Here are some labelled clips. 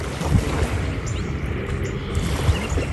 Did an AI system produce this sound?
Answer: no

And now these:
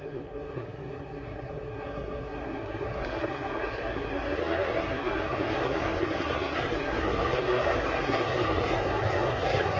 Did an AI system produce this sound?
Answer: yes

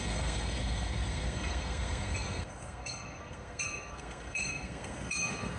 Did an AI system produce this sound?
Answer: yes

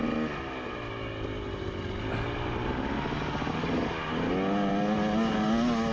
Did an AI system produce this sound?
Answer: no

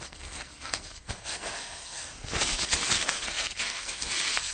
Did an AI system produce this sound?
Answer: yes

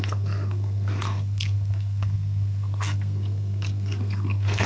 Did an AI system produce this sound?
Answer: yes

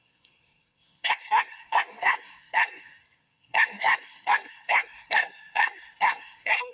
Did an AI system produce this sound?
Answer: yes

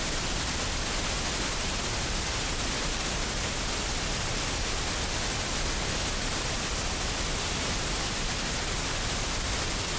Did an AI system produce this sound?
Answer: no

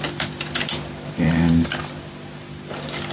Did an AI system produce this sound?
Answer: no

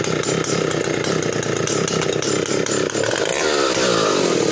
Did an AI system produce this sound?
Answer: no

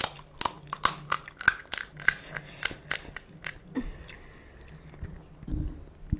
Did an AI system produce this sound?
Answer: no